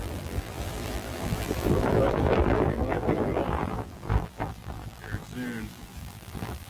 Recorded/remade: remade